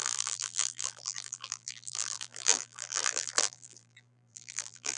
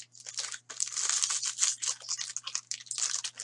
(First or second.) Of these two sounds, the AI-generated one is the first